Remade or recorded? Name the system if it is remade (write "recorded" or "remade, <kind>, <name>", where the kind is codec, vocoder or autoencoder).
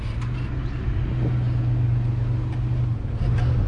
recorded